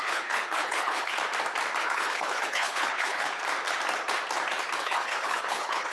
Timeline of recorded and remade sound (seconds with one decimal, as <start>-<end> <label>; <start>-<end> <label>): 0.0-1.1 remade; 1.1-1.8 recorded; 1.8-3.4 remade; 3.4-4.8 recorded; 4.8-5.9 remade